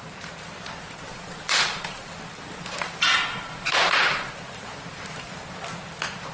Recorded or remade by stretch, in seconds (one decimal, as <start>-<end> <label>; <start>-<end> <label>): 0.0-1.1 recorded; 1.1-2.1 remade; 2.1-3.1 recorded; 3.1-4.3 remade; 4.3-6.3 recorded